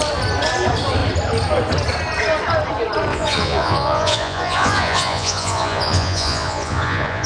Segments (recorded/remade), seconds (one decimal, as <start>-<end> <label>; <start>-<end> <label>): 0.0-3.1 recorded; 3.1-7.3 remade